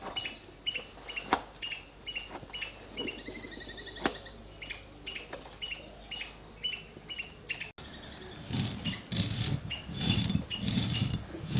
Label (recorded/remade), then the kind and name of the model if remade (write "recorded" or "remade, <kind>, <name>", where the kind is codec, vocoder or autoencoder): recorded